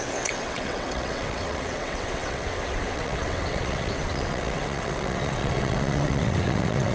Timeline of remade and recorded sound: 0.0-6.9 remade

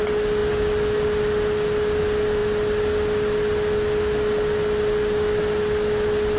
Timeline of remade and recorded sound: 0.0-6.4 recorded

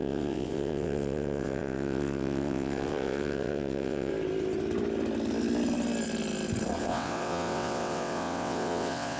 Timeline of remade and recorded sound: 0.0-4.1 remade; 4.1-6.8 recorded; 6.8-9.2 remade

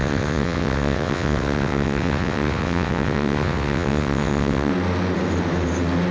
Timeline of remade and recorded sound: 0.0-4.7 remade; 4.7-6.1 recorded

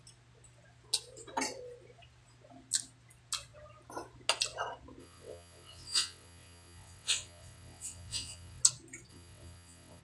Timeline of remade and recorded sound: 0.0-5.0 recorded; 5.0-8.6 remade; 8.6-9.1 recorded; 9.1-10.0 remade

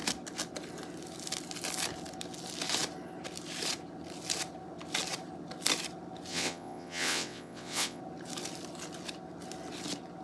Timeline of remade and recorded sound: 0.0-6.3 recorded; 6.3-8.0 remade; 8.0-10.2 recorded

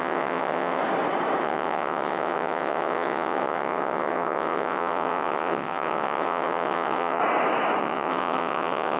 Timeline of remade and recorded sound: 0.0-0.8 remade; 0.8-1.4 recorded; 1.4-7.2 remade; 7.2-7.8 recorded; 7.8-9.0 remade

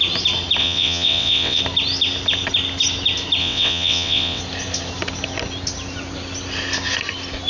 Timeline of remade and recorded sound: 0.0-0.6 recorded; 0.6-1.6 remade; 1.6-3.4 recorded; 3.4-4.4 remade; 4.4-7.5 recorded